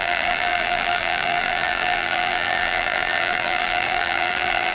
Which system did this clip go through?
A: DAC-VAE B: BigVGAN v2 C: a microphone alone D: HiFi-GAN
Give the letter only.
B